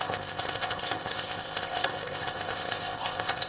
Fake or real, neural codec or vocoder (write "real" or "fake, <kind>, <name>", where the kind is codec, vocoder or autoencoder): fake, codec, ZipCodec